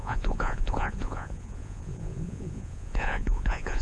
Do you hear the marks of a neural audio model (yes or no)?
yes